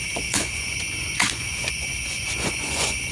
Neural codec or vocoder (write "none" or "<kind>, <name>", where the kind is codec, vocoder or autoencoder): vocoder, Vocos